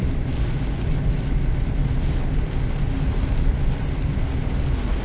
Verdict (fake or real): real